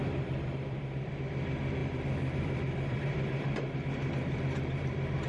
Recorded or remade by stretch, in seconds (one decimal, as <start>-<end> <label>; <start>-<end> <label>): 0.0-1.1 remade; 1.1-1.8 recorded; 1.8-5.3 remade